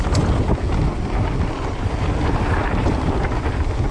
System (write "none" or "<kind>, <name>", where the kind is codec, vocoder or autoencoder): none